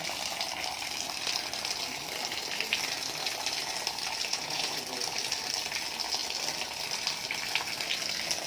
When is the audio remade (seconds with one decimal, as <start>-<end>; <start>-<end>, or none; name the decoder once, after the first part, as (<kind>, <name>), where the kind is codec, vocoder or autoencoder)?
4.3-4.8 (vocoder, Vocos)